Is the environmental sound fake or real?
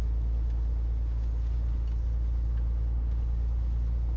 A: real